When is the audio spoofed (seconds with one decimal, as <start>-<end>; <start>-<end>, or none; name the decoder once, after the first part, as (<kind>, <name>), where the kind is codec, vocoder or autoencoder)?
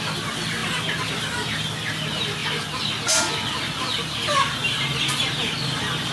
none